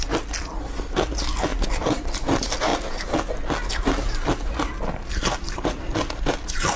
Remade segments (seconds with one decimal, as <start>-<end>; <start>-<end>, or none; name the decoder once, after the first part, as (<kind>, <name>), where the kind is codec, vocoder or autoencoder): 1.5-2.0 (vocoder, BigVGAN v2)